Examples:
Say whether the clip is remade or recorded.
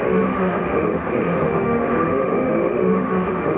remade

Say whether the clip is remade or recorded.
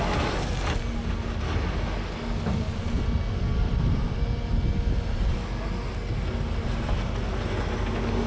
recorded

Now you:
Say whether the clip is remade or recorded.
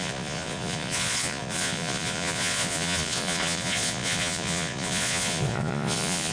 remade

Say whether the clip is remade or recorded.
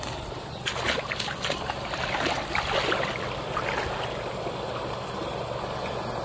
recorded